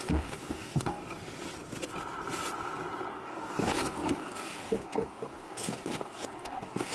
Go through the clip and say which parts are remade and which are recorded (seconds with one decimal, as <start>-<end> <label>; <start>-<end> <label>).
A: 0.0-1.0 remade; 1.0-3.1 recorded; 3.1-6.9 remade

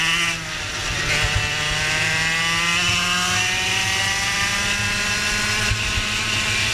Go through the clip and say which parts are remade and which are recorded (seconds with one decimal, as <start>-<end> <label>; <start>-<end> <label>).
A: 0.0-6.7 recorded